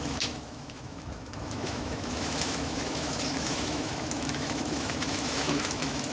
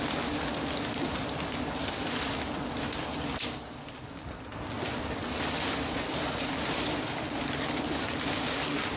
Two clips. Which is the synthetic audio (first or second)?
first